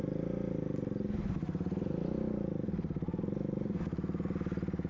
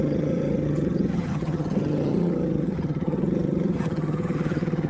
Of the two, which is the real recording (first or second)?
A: first